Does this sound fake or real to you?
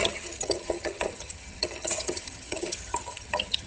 fake